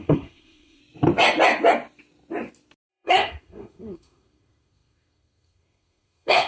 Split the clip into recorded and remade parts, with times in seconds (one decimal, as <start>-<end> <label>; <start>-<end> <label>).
0.0-0.8 remade; 0.8-2.9 recorded; 2.9-6.5 remade